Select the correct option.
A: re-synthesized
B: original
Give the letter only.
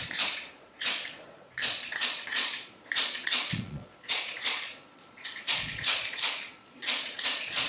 A